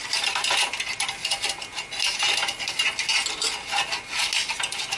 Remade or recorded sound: recorded